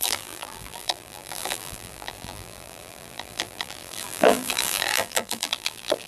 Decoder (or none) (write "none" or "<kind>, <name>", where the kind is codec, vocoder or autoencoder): vocoder, BigVGAN v2